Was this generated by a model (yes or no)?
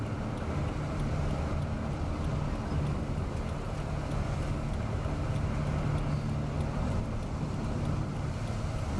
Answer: no